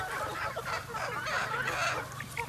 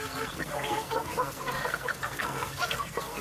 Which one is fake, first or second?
second